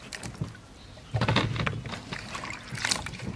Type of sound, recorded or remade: recorded